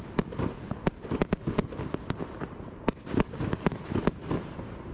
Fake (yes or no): no